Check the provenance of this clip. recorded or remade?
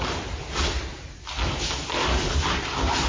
recorded